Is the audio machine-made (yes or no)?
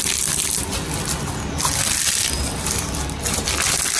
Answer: no